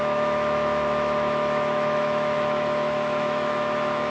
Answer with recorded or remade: remade